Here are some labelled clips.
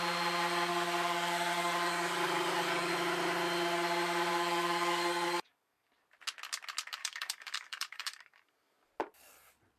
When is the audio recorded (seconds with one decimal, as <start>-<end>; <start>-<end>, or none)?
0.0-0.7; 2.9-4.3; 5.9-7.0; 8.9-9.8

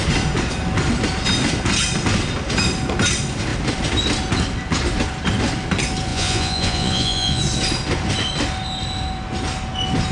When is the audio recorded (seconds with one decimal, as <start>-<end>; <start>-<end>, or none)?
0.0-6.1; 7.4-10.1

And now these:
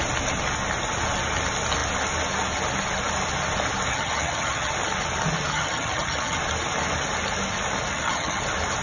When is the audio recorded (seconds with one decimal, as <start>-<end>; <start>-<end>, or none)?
0.0-3.9; 4.7-5.5; 6.4-7.9; 8.4-8.8